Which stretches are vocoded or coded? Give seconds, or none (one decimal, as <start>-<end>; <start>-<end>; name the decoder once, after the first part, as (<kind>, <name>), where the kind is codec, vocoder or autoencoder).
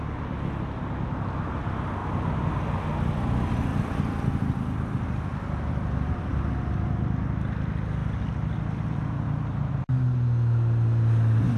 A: 2.0-2.8 (vocoder, BigVGAN v2); 3.7-7.1; 8.0-9.6